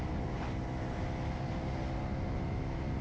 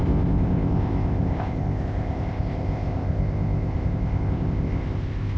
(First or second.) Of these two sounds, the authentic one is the first